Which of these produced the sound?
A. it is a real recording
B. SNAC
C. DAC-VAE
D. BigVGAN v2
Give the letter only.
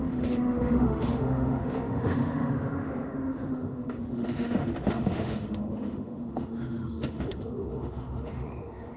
C